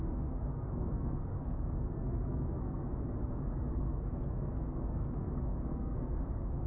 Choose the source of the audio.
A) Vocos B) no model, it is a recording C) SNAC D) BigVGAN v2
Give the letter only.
C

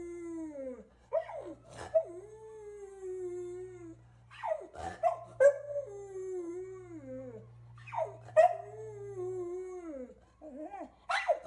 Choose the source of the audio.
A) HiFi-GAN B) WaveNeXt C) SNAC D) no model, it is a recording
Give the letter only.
D